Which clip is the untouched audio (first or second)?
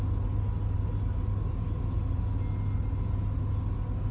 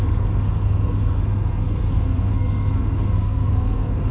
first